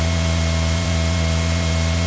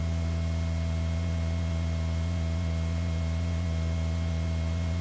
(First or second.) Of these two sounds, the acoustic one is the second